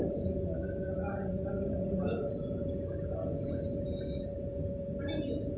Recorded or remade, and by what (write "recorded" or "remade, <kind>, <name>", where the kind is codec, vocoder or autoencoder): remade, vocoder, Vocos